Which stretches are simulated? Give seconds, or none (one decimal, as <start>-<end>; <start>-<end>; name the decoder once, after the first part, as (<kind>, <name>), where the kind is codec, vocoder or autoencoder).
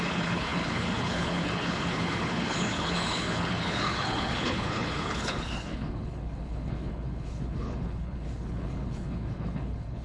0.0-10.0 (codec, HILCodec)